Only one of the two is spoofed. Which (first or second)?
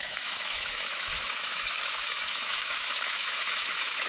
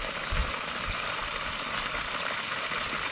first